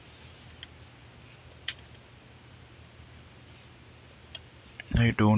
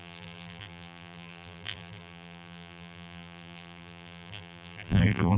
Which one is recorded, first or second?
first